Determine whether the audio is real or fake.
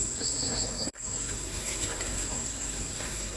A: fake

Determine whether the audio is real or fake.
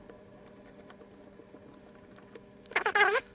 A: real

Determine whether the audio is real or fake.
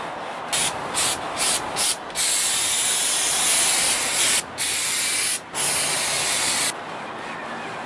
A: real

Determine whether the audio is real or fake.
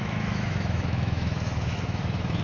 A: fake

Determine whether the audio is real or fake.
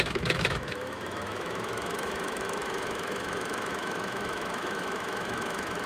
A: fake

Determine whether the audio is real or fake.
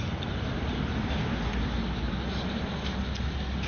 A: real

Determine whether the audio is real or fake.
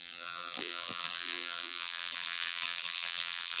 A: fake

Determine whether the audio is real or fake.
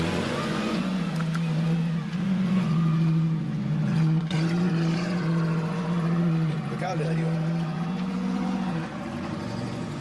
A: fake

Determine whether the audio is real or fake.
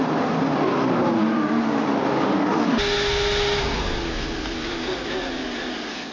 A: real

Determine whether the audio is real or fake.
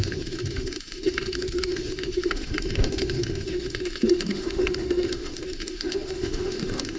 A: fake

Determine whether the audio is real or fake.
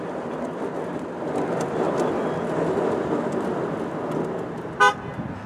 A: real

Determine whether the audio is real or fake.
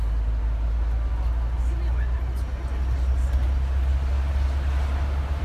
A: real